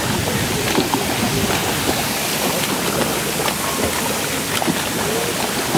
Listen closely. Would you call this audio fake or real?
real